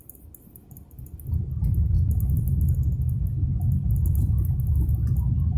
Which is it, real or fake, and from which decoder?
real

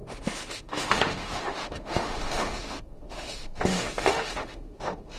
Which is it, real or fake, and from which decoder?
fake, autoencoder, DAC-VAE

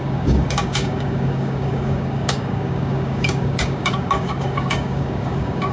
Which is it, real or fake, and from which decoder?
fake, codec, DAC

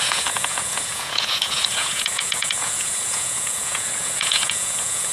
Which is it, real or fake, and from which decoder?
fake, vocoder, Vocos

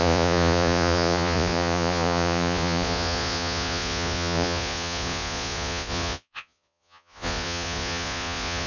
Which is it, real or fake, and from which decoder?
fake, vocoder, Vocos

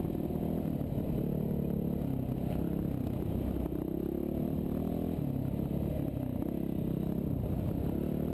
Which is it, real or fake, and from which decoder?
real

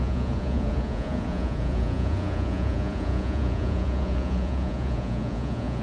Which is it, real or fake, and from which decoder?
fake, vocoder, Vocos